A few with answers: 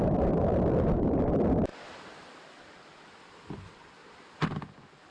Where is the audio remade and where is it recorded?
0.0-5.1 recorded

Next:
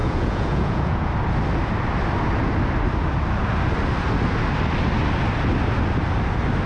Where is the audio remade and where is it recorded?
0.0-1.1 remade; 1.1-6.7 recorded

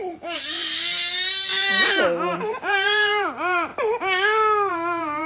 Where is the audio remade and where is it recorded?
0.0-3.7 remade; 3.7-4.7 recorded; 4.7-5.3 remade

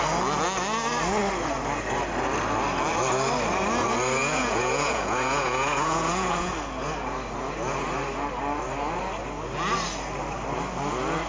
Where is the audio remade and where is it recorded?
0.0-4.2 recorded; 4.2-6.5 remade; 6.5-11.3 recorded

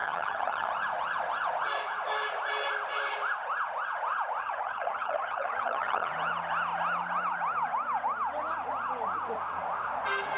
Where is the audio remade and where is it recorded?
0.0-0.7 remade; 0.7-4.4 recorded; 4.4-6.1 remade; 6.1-10.4 recorded